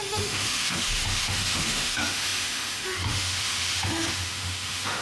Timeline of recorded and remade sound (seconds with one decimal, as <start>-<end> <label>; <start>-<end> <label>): 0.0-5.0 remade